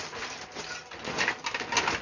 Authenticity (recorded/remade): recorded